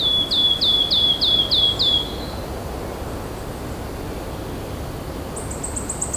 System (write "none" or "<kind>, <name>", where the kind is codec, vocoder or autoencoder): none